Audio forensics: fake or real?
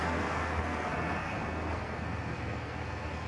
fake